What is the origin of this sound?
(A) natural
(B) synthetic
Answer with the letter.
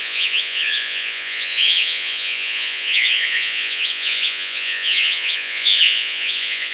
B